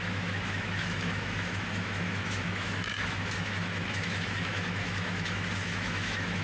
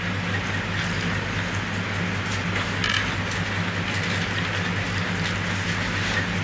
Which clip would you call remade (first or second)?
first